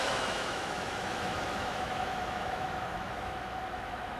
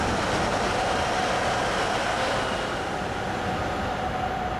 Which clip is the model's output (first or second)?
first